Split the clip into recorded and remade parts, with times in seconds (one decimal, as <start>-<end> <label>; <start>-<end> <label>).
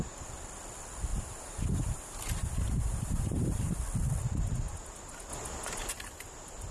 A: 0.0-1.1 recorded; 1.1-3.8 remade; 3.8-6.7 recorded